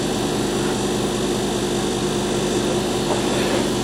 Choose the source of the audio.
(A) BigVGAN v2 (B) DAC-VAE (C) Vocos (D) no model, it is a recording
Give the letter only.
D